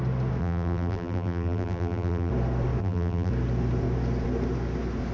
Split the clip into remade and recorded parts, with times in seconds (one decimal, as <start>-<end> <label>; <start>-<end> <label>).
0.0-0.4 recorded; 0.4-2.3 remade; 2.3-2.8 recorded; 2.8-3.3 remade; 3.3-5.1 recorded